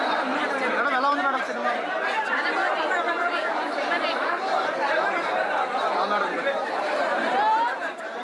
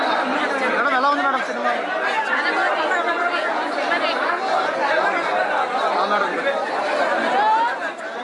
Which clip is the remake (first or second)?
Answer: first